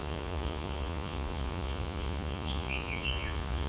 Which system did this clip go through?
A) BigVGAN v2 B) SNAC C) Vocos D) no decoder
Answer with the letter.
C